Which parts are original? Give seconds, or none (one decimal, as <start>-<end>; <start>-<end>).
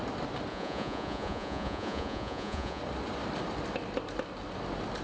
0.0-0.5; 2.8-5.0